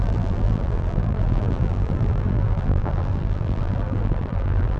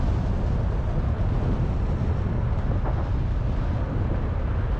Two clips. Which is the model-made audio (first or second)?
first